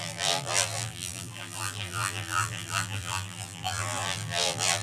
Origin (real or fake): fake